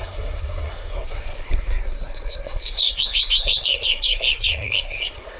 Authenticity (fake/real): fake